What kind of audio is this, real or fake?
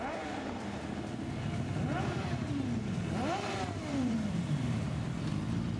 fake